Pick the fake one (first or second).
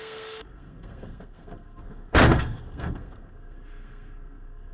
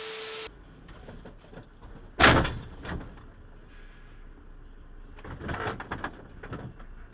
first